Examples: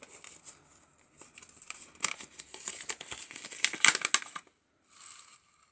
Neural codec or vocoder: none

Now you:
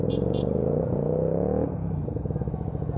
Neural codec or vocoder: vocoder, Vocos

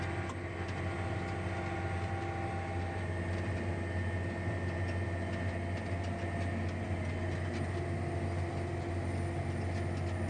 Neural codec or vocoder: none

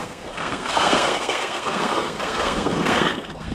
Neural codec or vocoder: codec, SNAC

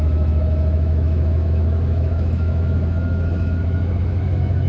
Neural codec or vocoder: autoencoder, DAC-VAE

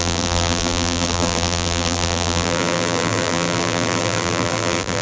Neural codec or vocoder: vocoder, BigVGAN v2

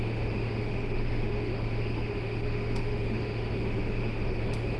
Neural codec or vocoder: autoencoder, DAC-VAE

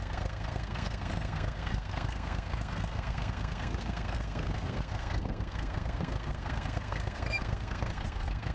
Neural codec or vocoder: codec, SNAC